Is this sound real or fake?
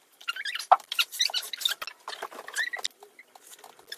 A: real